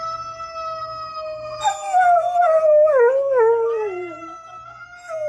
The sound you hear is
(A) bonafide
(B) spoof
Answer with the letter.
A